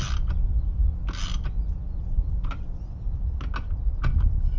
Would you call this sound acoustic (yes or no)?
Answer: yes